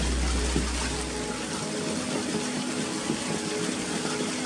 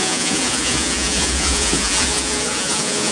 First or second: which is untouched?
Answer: first